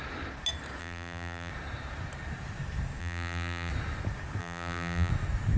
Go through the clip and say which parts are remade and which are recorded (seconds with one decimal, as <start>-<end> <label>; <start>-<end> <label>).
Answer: 0.0-0.8 recorded; 0.8-1.5 remade; 1.5-3.0 recorded; 3.0-3.7 remade; 3.7-4.4 recorded; 4.4-5.1 remade; 5.1-5.6 recorded